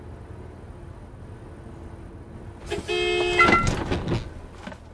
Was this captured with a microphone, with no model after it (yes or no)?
yes